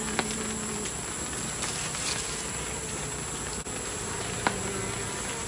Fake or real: real